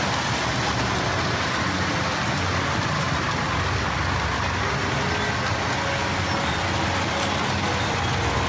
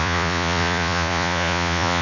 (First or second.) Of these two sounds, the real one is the first